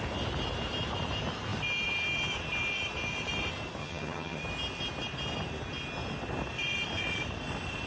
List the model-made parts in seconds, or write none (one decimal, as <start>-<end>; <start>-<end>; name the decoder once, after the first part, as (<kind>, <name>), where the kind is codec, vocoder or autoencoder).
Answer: 3.8-4.4 (vocoder, HiFi-GAN)